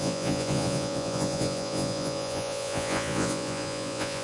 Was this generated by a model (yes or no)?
yes